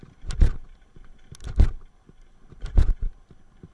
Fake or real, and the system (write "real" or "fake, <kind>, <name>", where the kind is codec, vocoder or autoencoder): real